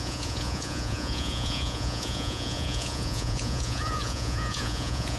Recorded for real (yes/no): no